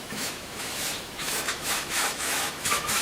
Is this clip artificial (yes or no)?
yes